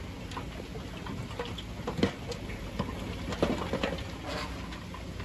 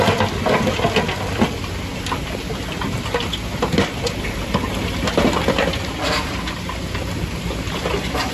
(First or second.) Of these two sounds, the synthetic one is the second